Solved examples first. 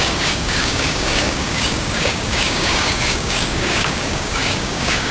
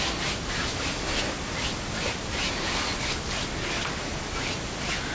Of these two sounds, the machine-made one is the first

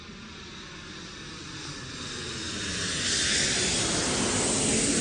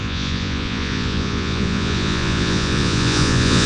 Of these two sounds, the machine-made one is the second